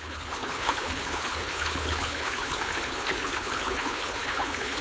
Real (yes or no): no